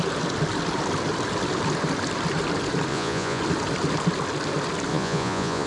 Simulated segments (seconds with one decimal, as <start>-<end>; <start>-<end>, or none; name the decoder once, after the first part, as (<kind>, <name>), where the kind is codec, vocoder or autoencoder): 2.9-3.4 (vocoder, Vocos); 4.9-5.7